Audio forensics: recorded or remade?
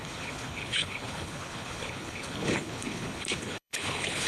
remade